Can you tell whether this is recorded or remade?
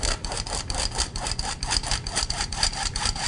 recorded